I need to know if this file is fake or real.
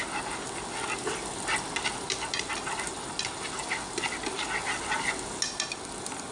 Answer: real